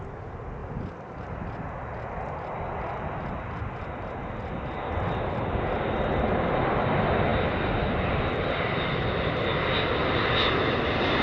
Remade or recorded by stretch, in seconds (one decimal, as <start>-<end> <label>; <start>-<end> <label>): 0.0-11.2 recorded